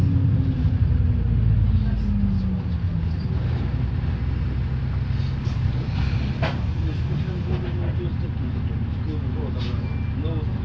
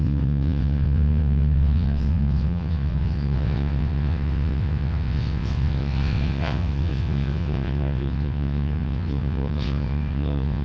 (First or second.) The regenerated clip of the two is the second